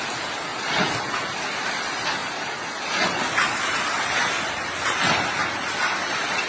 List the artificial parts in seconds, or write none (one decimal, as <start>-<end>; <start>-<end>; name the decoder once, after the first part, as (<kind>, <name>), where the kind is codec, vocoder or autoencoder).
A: none